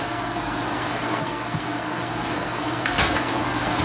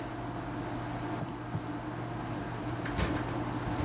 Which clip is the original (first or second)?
second